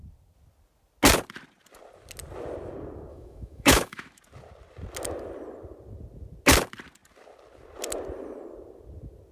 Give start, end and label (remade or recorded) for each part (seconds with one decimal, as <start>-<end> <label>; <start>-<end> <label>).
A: 0.0-3.1 recorded; 3.1-4.2 remade; 4.2-9.3 recorded